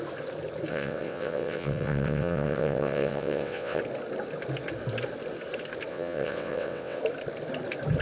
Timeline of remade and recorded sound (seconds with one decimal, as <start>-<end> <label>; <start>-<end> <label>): 0.0-0.7 recorded; 0.7-3.8 remade; 3.8-5.9 recorded; 5.9-7.0 remade; 7.0-8.0 recorded